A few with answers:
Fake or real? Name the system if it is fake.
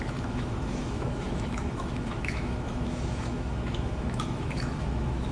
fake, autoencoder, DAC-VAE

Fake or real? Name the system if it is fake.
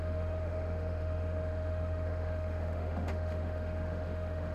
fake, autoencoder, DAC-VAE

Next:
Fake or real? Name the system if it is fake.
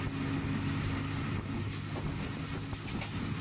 real